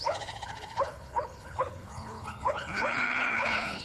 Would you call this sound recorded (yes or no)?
no